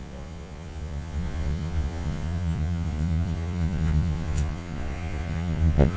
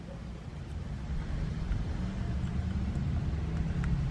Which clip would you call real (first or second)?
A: second